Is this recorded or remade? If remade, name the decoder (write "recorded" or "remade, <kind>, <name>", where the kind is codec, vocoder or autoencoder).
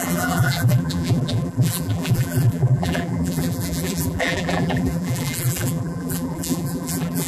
remade, vocoder, BigVGAN v2